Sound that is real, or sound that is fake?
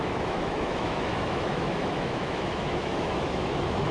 fake